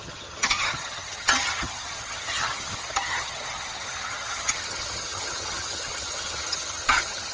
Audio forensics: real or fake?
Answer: fake